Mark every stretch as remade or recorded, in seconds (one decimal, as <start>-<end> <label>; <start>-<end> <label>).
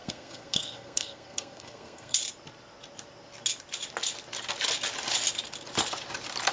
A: 0.0-2.2 remade; 2.2-6.5 recorded